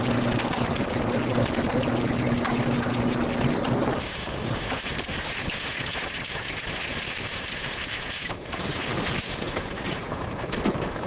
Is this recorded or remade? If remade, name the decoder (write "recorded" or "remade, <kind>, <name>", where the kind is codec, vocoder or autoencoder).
recorded